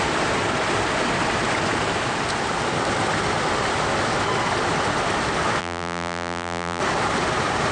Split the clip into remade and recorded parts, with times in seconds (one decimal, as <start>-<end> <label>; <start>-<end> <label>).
0.0-5.6 recorded; 5.6-6.8 remade; 6.8-7.7 recorded